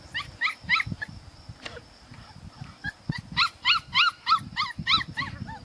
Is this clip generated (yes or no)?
no